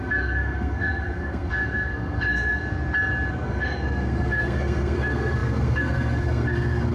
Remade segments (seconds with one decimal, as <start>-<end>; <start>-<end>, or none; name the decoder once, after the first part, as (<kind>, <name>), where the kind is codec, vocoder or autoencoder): 0.0-2.6 (codec, SNAC); 3.3-6.9